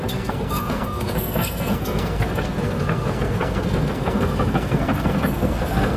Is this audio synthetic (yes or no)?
yes